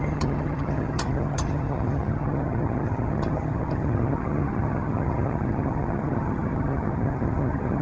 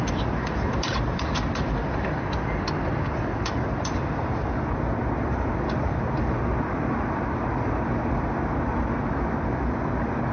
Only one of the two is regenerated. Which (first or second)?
first